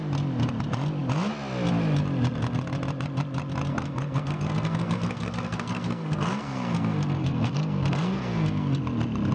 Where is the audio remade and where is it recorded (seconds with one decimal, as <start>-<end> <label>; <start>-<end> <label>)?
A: 0.0-3.7 recorded; 3.7-8.8 remade; 8.8-9.3 recorded